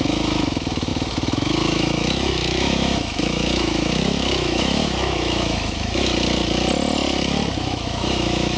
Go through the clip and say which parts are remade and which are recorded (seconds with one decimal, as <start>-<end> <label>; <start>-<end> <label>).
0.0-6.1 remade; 6.1-7.6 recorded; 7.6-8.6 remade